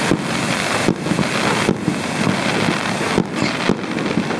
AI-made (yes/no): no